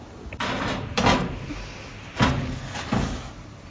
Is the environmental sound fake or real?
real